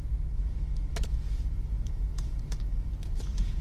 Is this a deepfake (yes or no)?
yes